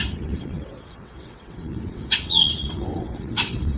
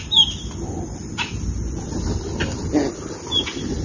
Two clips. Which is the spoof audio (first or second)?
first